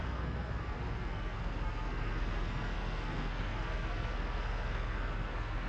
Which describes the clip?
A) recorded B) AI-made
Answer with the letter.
B